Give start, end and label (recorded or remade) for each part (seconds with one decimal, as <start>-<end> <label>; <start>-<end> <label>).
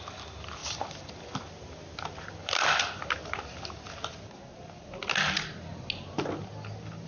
0.0-0.6 recorded; 0.6-3.0 remade; 3.0-7.1 recorded